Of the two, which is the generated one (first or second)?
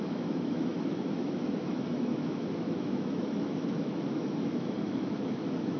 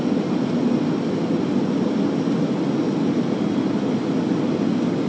first